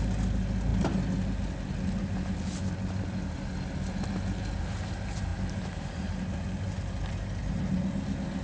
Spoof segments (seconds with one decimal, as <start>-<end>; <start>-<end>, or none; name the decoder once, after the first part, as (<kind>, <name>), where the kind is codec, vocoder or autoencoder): none